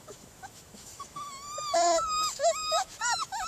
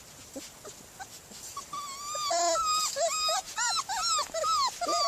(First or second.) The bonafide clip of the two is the second